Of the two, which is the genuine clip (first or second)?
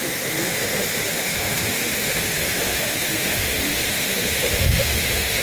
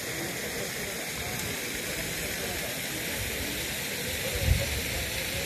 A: second